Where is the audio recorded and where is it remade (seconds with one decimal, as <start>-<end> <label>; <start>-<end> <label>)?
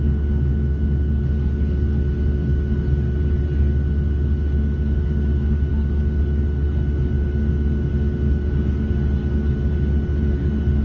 0.0-10.8 recorded